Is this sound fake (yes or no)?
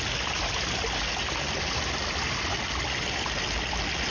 no